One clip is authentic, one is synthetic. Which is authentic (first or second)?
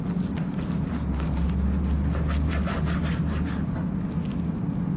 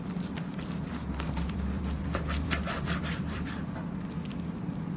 first